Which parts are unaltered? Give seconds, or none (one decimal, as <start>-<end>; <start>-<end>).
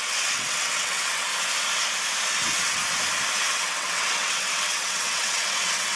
1.3-2.3; 2.8-3.5